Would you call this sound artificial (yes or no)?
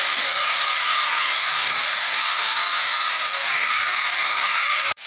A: yes